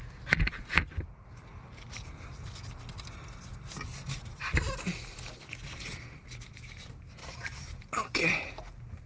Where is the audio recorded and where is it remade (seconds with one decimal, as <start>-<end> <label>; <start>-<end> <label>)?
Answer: 0.0-7.2 recorded; 7.2-8.5 remade; 8.5-9.1 recorded